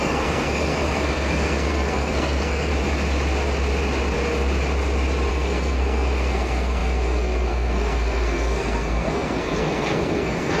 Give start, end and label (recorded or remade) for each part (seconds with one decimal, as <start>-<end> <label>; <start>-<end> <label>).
0.0-2.7 remade; 2.7-5.3 recorded; 5.3-10.6 remade